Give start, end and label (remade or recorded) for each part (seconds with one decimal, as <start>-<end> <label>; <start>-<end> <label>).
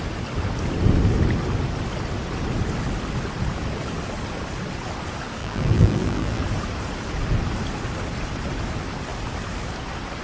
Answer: 0.0-5.4 recorded; 5.4-6.4 remade; 6.4-10.2 recorded